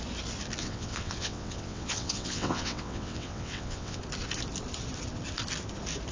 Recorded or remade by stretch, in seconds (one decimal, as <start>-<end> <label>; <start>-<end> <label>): 0.0-0.6 recorded; 0.6-4.0 remade; 4.0-6.1 recorded